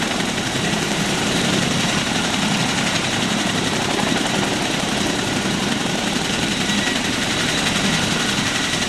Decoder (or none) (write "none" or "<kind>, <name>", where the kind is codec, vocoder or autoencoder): vocoder, BigVGAN v2